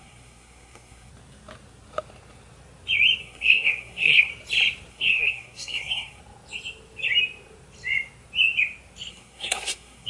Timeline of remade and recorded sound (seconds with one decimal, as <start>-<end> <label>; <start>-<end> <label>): 0.0-1.1 remade; 1.1-3.2 recorded; 3.2-4.3 remade; 4.3-4.9 recorded; 4.9-6.2 remade; 6.2-9.1 recorded; 9.1-10.1 remade